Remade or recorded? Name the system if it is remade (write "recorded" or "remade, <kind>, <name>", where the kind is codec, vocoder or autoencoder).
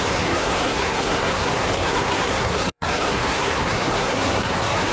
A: remade, codec, SNAC